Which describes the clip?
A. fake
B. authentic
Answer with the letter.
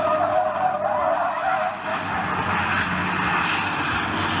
B